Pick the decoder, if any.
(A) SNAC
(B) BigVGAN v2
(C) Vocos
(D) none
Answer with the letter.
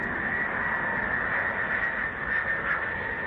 D